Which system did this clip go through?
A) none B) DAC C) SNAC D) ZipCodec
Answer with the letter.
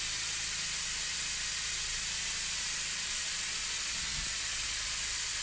A